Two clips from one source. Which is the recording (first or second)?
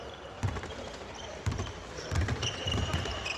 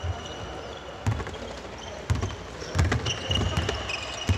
second